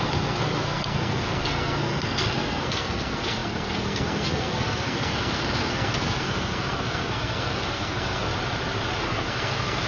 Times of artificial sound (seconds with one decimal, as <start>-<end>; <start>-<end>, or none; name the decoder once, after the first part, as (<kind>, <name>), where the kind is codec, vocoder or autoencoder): 0.0-8.3 (codec, SNAC); 9.0-9.9